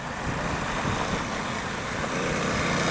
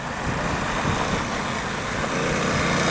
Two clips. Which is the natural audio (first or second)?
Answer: second